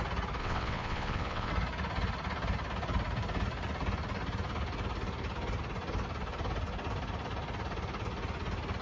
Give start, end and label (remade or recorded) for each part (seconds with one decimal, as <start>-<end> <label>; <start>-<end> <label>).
0.0-0.4 recorded; 0.4-1.5 remade; 1.5-8.8 recorded